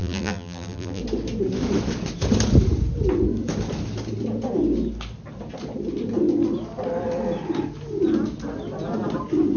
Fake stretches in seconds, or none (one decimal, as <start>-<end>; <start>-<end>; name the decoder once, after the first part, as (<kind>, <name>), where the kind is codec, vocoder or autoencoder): 0.0-1.0 (vocoder, BigVGAN v2)